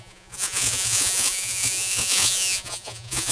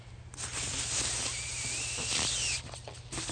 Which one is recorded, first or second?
second